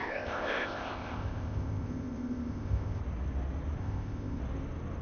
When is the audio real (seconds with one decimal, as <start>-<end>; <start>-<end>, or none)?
3.0-3.8; 4.4-5.0